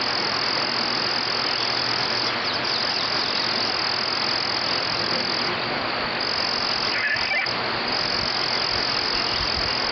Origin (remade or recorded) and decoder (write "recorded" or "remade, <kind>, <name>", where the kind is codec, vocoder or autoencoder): recorded